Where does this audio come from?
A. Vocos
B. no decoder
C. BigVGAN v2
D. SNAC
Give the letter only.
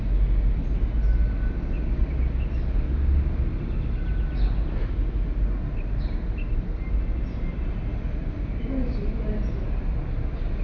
B